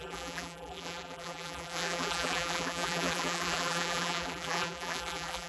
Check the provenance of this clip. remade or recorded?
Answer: remade